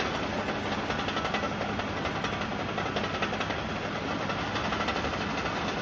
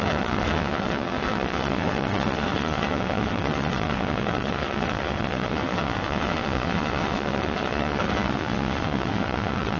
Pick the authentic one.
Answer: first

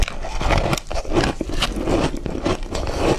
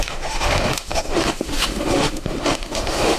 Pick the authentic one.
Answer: first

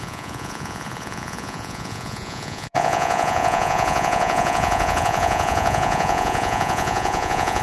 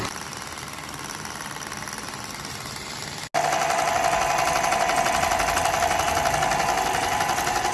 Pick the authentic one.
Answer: second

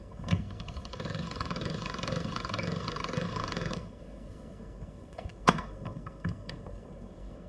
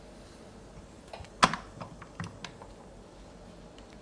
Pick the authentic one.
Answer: second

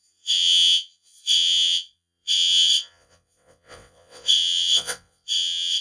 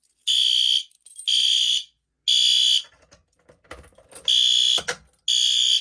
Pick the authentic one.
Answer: second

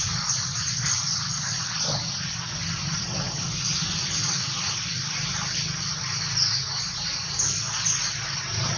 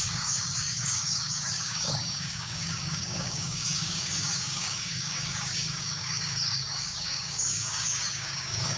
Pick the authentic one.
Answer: first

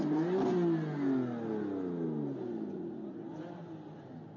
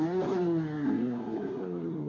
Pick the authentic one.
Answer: first